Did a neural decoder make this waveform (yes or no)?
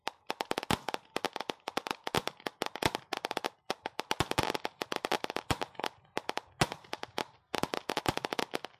no